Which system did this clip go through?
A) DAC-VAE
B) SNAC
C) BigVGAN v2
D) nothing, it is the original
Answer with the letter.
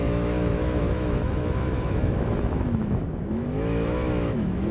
A